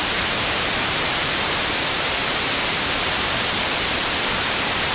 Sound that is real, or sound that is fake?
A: fake